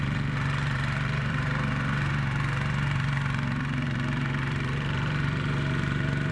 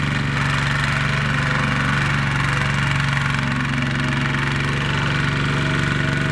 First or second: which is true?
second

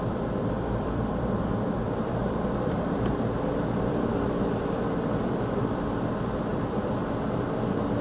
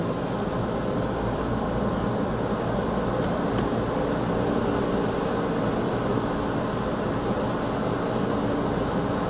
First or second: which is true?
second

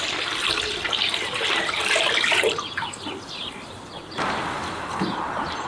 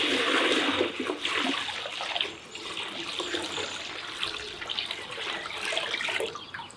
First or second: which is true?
second